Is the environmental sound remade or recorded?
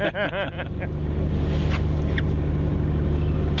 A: recorded